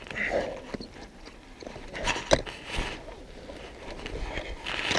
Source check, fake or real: real